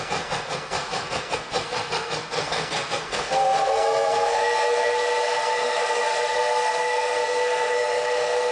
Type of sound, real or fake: fake